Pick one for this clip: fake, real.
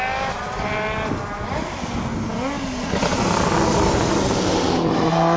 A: real